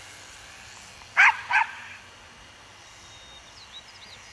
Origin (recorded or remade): recorded